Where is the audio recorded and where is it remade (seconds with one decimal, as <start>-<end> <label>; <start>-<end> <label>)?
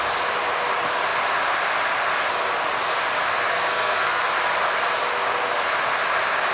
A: 0.0-3.5 recorded; 3.5-4.2 remade; 4.2-6.5 recorded